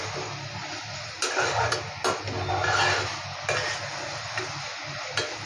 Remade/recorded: recorded